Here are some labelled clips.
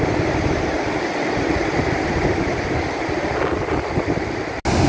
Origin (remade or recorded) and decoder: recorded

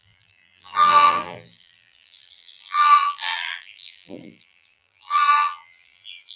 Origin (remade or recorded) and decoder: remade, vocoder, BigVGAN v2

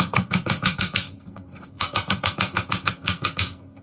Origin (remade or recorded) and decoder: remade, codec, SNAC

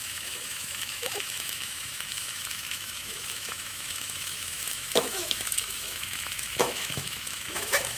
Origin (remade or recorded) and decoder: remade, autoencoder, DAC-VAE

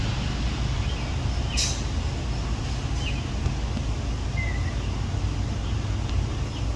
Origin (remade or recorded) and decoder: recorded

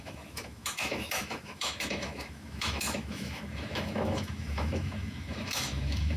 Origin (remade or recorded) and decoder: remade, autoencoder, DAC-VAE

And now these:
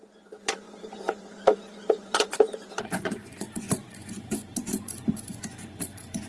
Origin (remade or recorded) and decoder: remade, vocoder, Vocos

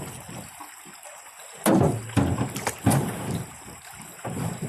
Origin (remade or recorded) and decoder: recorded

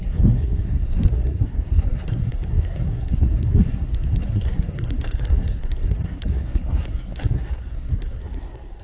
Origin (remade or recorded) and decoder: remade, codec, SNAC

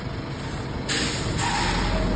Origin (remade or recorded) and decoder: recorded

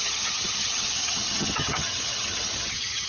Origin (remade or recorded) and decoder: remade, vocoder, HiFi-GAN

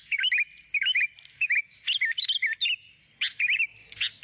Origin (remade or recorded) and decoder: recorded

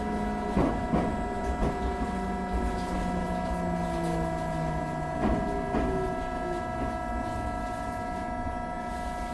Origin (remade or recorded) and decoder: recorded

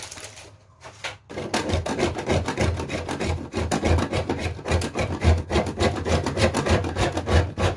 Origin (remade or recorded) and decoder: recorded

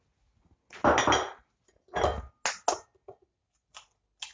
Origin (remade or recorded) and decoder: recorded